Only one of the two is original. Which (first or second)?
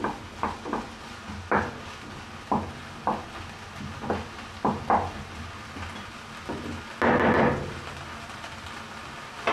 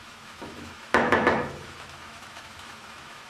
first